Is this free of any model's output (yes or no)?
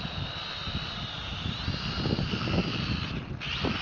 yes